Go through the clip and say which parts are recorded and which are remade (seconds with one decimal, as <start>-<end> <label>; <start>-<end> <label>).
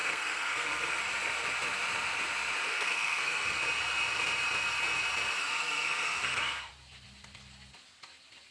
0.0-1.0 remade; 1.0-2.7 recorded; 2.7-3.6 remade; 3.6-5.4 recorded; 5.4-6.7 remade; 6.7-8.5 recorded